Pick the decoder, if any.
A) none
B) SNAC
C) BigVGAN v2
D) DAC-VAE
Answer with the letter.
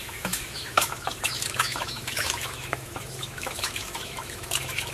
D